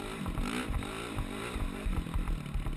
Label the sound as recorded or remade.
recorded